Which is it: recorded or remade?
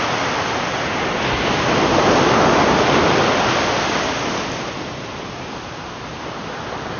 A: recorded